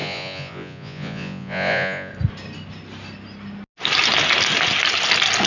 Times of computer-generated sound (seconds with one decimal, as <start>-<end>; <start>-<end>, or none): 0.0-2.1